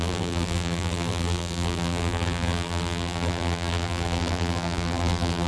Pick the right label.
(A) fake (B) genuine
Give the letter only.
A